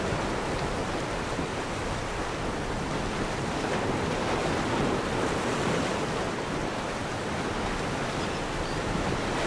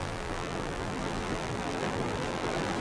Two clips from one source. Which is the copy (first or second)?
second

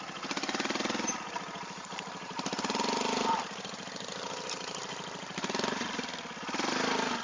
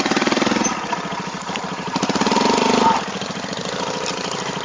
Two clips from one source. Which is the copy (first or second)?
second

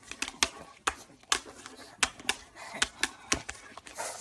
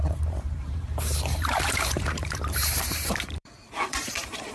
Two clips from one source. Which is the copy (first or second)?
second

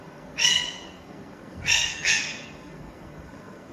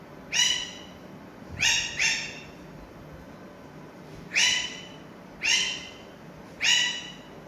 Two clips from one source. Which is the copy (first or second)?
first